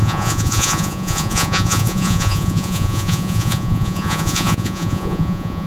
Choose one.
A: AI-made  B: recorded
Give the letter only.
A